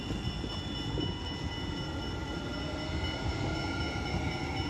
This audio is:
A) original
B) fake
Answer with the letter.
A